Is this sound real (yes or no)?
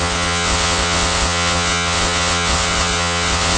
no